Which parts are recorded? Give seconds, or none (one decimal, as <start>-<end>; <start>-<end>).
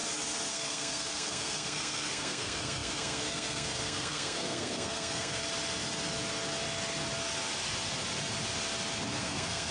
0.0-0.5; 5.4-9.2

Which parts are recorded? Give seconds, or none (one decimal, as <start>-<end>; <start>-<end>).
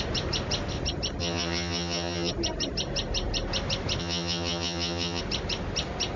0.0-1.2; 2.3-4.0; 5.2-6.2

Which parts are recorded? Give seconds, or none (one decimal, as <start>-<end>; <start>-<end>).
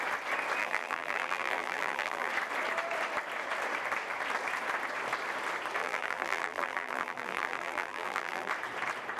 0.0-0.6; 2.3-5.8; 8.5-9.2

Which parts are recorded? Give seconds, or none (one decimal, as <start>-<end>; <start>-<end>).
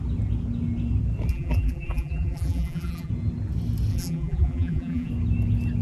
0.0-1.3; 3.1-3.9; 5.1-5.8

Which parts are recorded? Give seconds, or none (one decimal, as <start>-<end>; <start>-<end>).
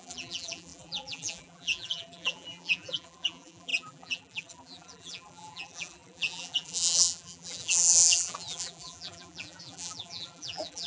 none